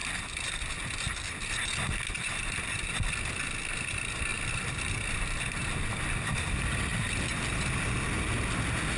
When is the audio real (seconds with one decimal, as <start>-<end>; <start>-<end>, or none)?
0.0-9.0